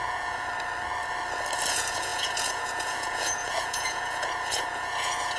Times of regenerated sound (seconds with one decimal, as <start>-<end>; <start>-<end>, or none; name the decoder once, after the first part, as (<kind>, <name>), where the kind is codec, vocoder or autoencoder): 0.0-0.5 (vocoder, Vocos); 1.7-5.4